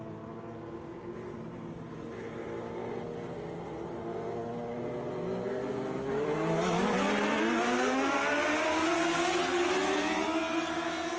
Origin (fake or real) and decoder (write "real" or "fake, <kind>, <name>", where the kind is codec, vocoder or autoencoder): real